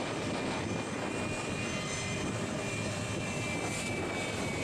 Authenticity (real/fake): real